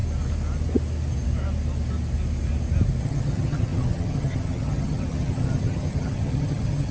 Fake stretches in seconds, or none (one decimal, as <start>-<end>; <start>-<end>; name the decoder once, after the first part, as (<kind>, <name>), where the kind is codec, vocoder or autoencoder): 3.0-6.9 (vocoder, HiFi-GAN)